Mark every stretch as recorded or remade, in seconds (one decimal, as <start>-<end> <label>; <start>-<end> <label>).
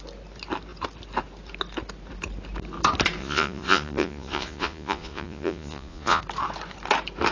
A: 0.0-3.2 recorded; 3.2-6.2 remade; 6.2-7.3 recorded